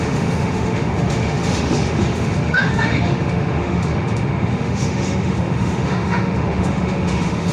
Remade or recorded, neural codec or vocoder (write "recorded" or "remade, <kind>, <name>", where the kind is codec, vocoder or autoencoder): remade, autoencoder, DAC-VAE